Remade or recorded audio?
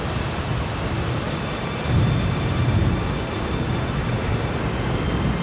recorded